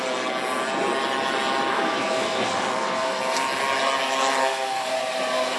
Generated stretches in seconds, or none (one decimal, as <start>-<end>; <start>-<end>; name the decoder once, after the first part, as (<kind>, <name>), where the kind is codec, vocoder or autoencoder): 1.7-3.2 (codec, SNAC); 4.4-4.9